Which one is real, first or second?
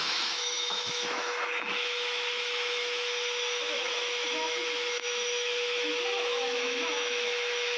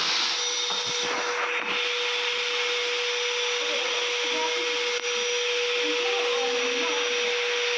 second